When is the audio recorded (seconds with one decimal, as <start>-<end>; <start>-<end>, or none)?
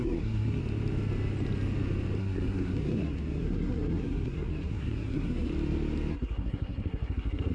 0.6-2.2; 5.5-6.1